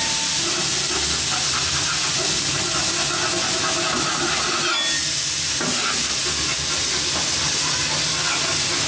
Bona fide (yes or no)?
yes